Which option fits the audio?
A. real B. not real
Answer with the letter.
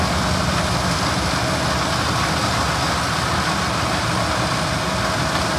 A